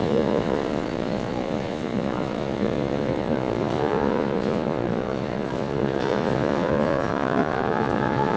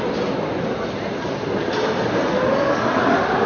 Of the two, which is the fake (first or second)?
first